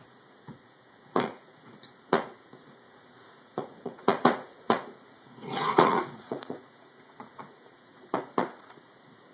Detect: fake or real fake